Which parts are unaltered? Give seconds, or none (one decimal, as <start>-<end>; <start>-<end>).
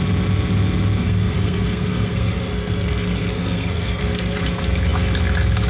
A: 0.0-1.0; 4.4-5.7